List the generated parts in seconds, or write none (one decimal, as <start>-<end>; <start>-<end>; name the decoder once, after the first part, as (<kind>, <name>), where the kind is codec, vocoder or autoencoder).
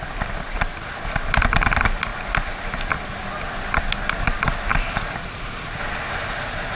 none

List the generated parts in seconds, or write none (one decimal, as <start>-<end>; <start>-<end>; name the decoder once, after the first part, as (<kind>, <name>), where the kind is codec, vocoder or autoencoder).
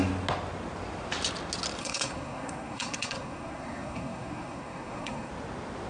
1.8-5.3 (codec, SNAC)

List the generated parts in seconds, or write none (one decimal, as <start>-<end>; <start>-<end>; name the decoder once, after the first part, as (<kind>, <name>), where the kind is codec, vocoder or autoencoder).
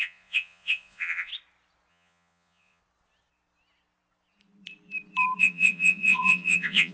0.0-1.3 (vocoder, Vocos); 1.9-2.8; 5.4-6.9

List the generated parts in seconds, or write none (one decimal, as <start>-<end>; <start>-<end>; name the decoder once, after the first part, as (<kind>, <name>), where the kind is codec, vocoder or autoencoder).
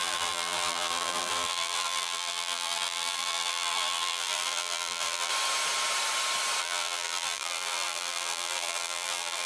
0.0-5.3 (vocoder, BigVGAN v2); 6.6-9.5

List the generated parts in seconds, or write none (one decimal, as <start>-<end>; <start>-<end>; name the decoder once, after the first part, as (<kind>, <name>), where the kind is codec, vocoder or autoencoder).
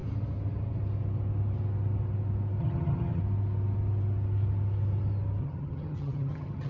2.6-3.2 (vocoder, HiFi-GAN); 5.4-6.7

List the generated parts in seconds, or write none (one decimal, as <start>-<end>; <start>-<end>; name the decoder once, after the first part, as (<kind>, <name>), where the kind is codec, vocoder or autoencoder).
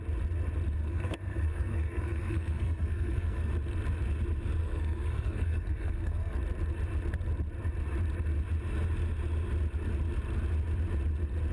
0.8-3.5 (codec, SNAC); 4.6-6.4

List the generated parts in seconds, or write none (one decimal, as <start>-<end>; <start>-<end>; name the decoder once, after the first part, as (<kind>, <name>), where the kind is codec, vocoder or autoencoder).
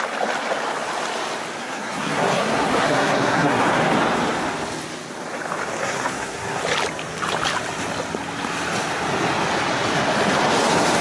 1.6-3.6 (codec, SNAC); 5.8-6.6